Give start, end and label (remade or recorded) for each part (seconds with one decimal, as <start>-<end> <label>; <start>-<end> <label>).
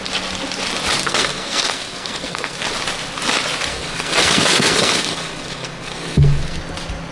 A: 0.0-1.0 recorded; 1.0-2.7 remade; 2.7-3.7 recorded; 3.7-6.6 remade; 6.6-7.1 recorded